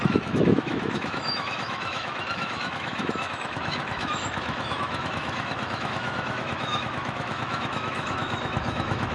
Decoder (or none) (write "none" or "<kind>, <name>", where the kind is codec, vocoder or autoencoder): autoencoder, DAC-VAE